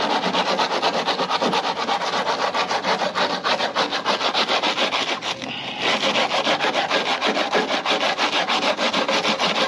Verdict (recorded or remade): recorded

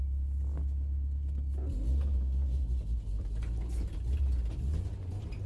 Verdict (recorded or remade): recorded